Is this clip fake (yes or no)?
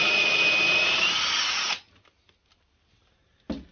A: no